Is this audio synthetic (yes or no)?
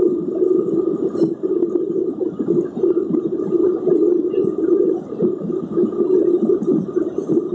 yes